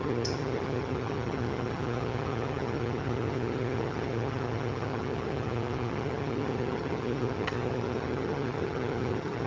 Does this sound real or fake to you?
fake